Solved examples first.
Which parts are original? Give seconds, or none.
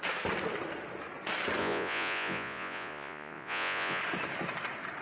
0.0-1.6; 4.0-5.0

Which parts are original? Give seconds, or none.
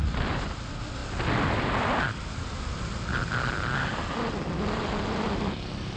0.0-6.0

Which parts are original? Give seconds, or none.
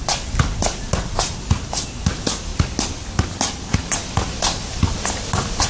0.0-5.7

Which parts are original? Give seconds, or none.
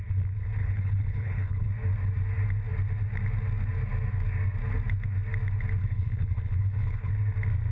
0.0-0.6; 1.7-5.8; 7.1-7.7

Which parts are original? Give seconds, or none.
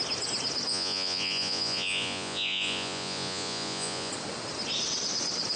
0.0-0.7; 4.1-5.6